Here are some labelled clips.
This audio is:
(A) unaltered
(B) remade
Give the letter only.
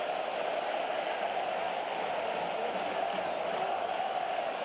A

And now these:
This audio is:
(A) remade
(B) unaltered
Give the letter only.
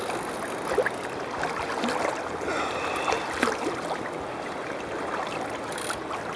B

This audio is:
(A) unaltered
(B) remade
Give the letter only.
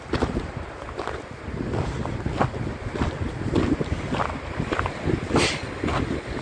A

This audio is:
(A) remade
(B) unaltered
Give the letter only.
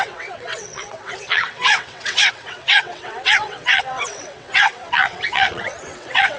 A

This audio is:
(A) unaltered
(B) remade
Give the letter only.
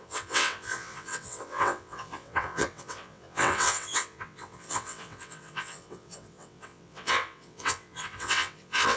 B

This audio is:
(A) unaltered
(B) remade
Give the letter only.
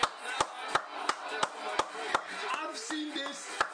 A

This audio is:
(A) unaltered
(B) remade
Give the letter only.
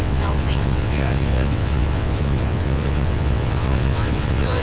B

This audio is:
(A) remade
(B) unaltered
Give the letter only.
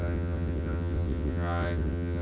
A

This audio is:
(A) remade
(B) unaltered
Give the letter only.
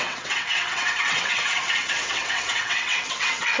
A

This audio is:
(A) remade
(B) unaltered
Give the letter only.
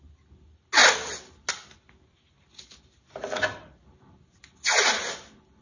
B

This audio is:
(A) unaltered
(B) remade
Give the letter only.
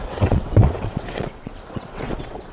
B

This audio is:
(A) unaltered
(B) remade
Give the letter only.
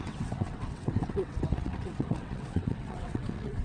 B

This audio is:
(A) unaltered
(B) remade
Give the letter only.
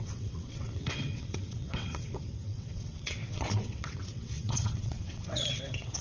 B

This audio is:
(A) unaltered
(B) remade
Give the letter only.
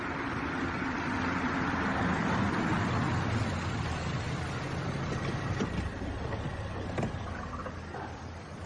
A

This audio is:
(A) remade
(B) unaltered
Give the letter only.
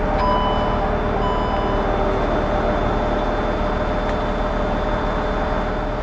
B